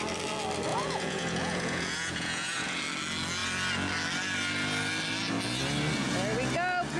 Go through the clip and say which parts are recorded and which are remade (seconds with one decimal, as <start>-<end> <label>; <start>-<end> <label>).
0.0-0.7 recorded; 0.7-2.8 remade; 2.8-7.0 recorded